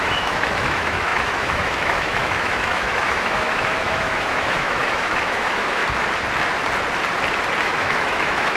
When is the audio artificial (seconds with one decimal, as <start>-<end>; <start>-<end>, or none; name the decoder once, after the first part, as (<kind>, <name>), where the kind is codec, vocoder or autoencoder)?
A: 0.0-5.8 (autoencoder, DAC-VAE); 7.6-8.6